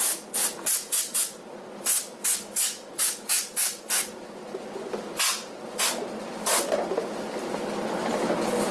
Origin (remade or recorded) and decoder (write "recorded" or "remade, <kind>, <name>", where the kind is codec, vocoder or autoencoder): recorded